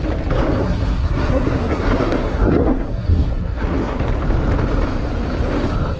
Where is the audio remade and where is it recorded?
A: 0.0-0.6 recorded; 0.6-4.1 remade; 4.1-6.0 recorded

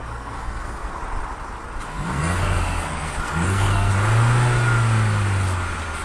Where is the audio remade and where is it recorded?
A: 0.0-1.0 remade; 1.0-1.9 recorded; 1.9-3.9 remade; 3.9-6.0 recorded

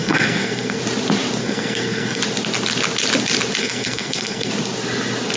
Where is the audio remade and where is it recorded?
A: 0.0-0.8 remade; 0.8-1.4 recorded; 1.4-2.2 remade; 2.2-3.6 recorded; 3.6-4.5 remade; 4.5-5.4 recorded

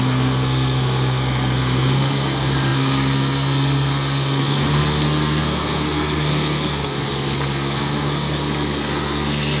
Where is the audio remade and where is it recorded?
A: 0.0-9.6 remade